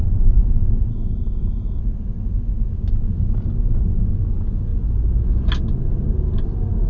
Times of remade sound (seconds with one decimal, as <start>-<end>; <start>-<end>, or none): 0.9-1.8

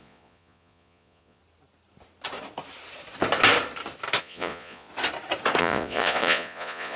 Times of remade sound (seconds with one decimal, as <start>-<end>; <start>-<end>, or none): 0.0-1.4; 4.2-4.9; 5.6-7.0